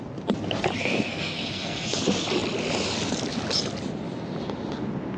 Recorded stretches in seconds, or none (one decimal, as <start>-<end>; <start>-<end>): 0.0-0.8; 2.0-5.2